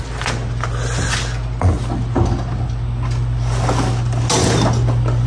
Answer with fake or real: real